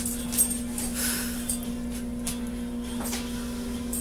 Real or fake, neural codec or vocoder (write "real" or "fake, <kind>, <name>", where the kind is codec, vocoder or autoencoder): real